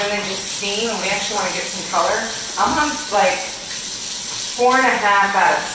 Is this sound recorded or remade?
recorded